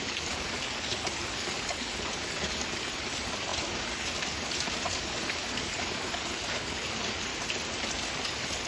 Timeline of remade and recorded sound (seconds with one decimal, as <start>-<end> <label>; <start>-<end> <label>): 0.0-7.3 remade; 7.3-7.9 recorded; 7.9-8.7 remade